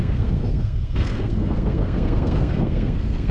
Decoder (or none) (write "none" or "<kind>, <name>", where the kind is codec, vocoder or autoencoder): codec, SNAC